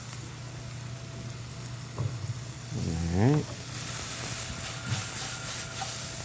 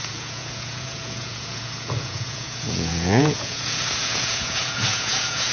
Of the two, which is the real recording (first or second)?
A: first